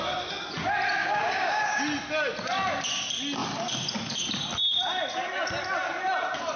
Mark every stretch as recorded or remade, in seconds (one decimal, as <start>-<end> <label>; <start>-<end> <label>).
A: 0.0-1.0 recorded; 1.0-1.8 remade; 1.8-6.6 recorded